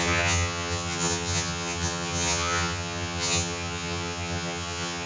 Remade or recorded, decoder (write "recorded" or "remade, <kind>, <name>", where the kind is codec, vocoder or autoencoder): remade, vocoder, HiFi-GAN